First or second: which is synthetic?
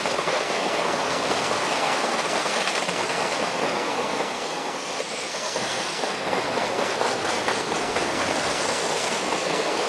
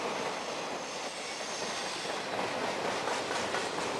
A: first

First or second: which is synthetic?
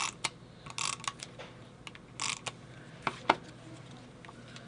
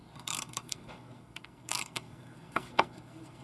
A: second